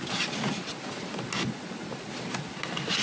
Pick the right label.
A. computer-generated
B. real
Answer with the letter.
B